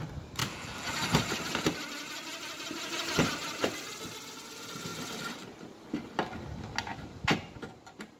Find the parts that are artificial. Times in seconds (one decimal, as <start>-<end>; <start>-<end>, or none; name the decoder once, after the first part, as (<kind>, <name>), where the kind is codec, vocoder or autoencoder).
none

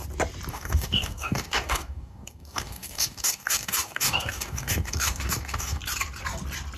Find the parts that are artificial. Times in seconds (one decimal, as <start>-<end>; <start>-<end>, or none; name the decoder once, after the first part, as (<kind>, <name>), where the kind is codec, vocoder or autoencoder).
0.5-5.8 (codec, DAC)

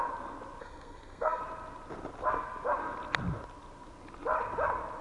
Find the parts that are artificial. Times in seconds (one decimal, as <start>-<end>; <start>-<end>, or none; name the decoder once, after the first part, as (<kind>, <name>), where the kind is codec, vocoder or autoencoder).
0.6-1.4 (codec, SNAC)

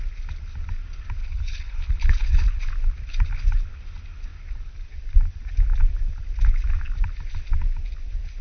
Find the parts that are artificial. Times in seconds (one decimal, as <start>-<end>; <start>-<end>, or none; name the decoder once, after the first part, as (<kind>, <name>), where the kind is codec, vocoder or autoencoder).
1.2-2.6 (codec, HILCodec)

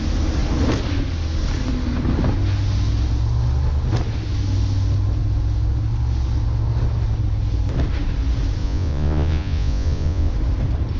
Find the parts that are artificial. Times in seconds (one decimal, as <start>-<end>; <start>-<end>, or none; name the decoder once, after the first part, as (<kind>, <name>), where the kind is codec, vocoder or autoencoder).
8.6-10.3 (vocoder, Vocos)

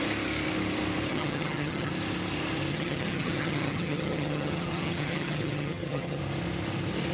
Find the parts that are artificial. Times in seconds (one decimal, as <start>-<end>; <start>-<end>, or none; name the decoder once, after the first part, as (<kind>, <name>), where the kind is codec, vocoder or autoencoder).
1.1-1.9 (vocoder, HiFi-GAN); 2.7-6.2